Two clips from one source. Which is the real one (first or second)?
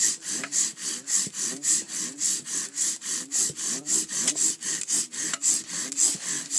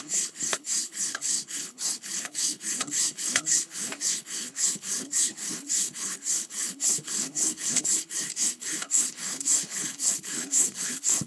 first